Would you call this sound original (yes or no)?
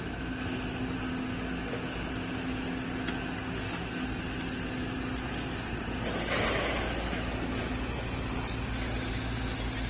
yes